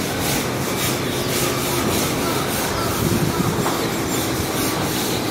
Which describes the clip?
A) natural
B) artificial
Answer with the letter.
A